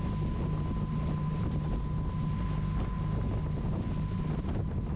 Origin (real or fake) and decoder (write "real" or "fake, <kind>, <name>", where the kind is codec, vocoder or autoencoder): real